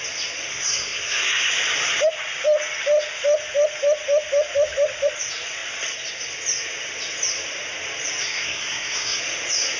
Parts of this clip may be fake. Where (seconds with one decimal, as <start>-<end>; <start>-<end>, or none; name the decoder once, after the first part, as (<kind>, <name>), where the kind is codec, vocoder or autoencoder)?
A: 0.5-1.5 (codec, SNAC); 8.2-9.2